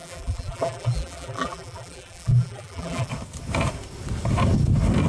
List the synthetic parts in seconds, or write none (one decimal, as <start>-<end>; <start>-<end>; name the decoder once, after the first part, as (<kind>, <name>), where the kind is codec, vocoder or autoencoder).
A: 0.0-3.1 (vocoder, BigVGAN v2)